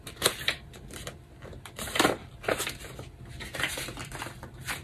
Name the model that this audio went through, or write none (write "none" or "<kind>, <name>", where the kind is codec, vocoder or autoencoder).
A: vocoder, BigVGAN v2